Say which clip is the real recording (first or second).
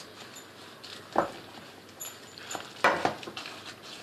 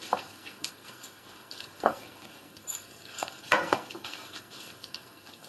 first